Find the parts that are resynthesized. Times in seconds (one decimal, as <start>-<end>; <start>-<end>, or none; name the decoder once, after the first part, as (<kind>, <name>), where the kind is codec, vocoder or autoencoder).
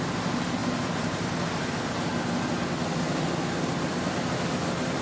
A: none